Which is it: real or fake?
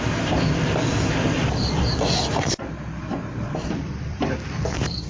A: fake